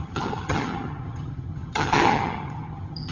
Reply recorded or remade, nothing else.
remade